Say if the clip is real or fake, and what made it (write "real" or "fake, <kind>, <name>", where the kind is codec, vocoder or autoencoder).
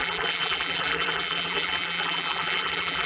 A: fake, vocoder, BigVGAN v2